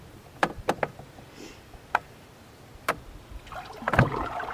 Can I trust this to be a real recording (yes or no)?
yes